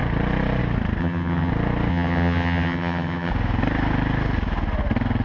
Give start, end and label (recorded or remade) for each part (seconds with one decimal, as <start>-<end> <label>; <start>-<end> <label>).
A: 0.0-1.0 recorded; 1.0-1.5 remade; 1.5-1.9 recorded; 1.9-3.3 remade; 3.3-5.2 recorded